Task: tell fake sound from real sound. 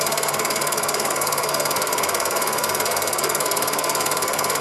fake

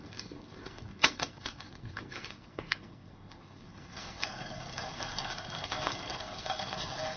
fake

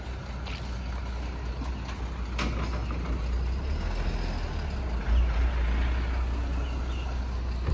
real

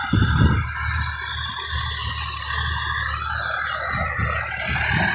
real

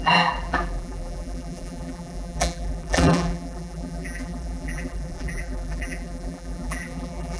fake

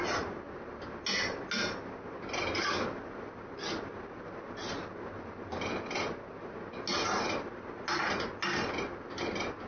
real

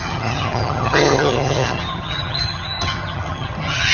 fake